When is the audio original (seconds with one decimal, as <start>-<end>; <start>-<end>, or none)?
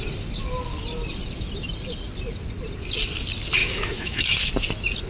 0.0-3.6; 4.5-5.1